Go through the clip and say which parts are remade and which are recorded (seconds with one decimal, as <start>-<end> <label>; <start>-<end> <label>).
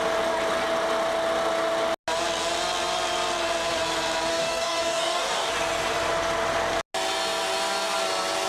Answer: 0.0-4.3 recorded; 4.3-5.5 remade; 5.5-8.5 recorded